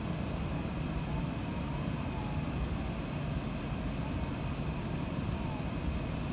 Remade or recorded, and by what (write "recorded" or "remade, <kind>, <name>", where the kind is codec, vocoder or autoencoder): recorded